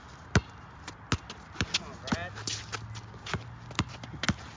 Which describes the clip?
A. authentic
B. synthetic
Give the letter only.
A